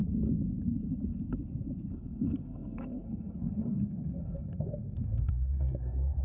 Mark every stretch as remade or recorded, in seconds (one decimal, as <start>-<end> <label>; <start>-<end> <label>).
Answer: 0.0-1.9 recorded; 1.9-6.2 remade